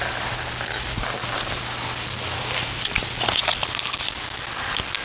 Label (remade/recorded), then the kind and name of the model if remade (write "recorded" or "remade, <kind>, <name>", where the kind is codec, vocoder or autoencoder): recorded